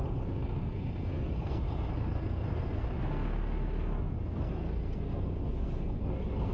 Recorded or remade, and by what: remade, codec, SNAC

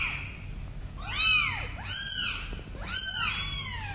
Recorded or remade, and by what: recorded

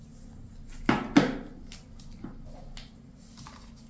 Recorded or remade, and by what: recorded